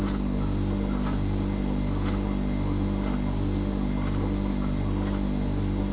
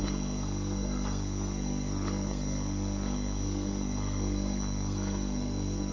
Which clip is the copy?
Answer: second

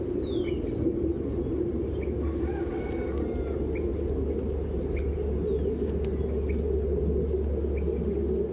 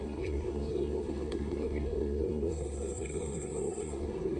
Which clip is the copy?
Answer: second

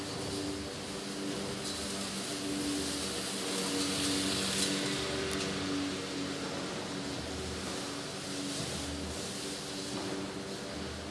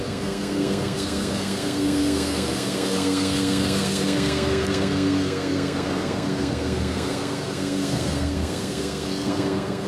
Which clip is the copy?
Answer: second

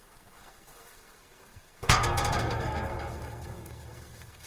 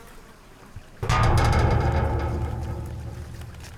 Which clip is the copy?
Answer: first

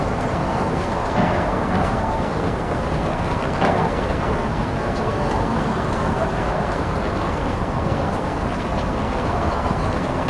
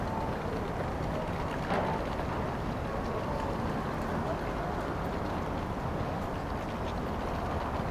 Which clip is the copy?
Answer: first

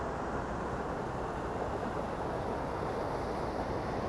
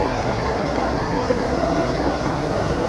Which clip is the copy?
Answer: second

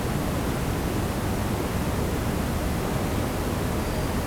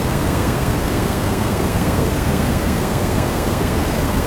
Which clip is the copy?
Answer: second